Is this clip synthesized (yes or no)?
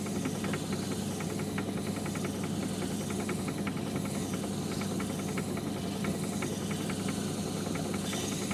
no